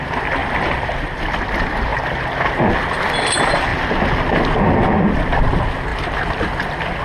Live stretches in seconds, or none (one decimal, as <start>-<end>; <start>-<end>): 0.0-0.4; 1.2-7.0